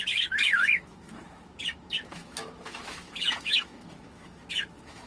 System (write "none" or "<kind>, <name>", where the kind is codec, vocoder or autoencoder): autoencoder, DAC-VAE